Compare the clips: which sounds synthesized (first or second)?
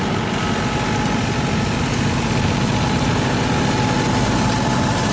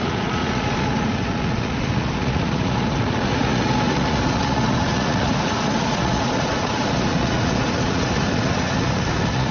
second